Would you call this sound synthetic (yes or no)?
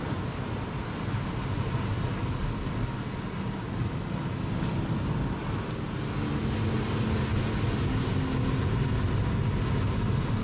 no